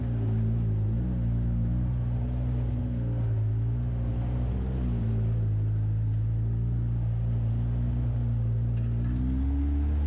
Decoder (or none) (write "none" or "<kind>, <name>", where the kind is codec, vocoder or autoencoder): none